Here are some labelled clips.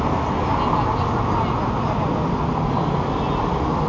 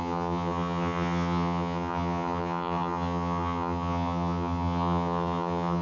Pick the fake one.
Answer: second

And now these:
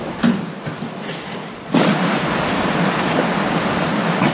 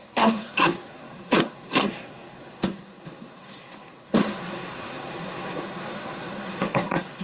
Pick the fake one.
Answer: second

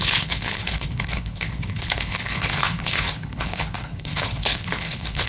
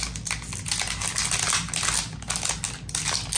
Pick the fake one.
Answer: first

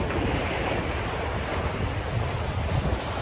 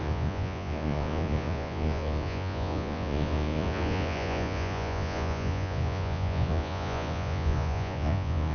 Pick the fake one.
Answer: second